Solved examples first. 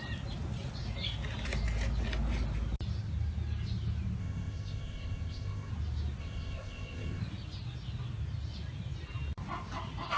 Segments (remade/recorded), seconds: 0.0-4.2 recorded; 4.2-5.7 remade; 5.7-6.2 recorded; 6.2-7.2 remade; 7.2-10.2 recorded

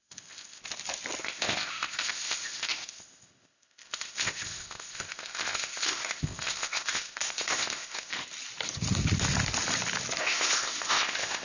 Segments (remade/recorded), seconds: 0.0-0.6 remade; 0.6-1.2 recorded; 1.2-8.2 remade; 8.2-10.2 recorded; 10.2-11.4 remade

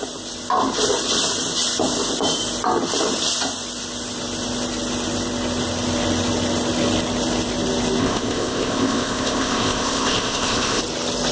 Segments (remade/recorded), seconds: 0.0-8.0 recorded; 8.0-10.8 remade; 10.8-11.3 recorded

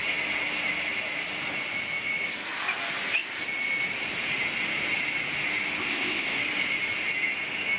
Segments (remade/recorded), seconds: 0.0-5.8 recorded; 5.8-6.4 remade; 6.4-7.8 recorded

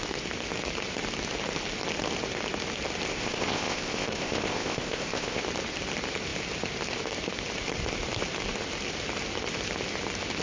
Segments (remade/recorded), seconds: 0.0-3.1 recorded; 3.1-5.4 remade; 5.4-10.4 recorded

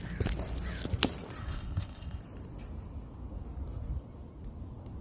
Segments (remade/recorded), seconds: 0.0-1.4 recorded; 1.4-2.2 remade; 2.2-5.0 recorded

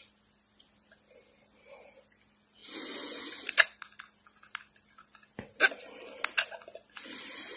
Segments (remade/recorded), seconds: 0.0-7.6 recorded

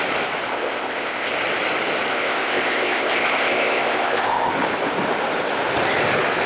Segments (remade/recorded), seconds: 0.0-0.5 recorded; 0.5-1.3 remade; 1.3-2.1 recorded; 2.1-4.5 remade; 4.5-6.5 recorded